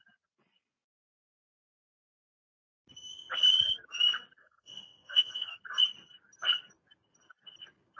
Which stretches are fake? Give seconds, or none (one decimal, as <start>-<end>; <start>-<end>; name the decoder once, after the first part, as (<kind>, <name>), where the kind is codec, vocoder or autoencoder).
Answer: 4.4-5.6 (codec, SNAC)